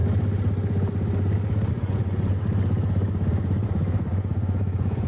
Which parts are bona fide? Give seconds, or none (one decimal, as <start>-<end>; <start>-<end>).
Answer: 0.0-1.7; 2.4-3.3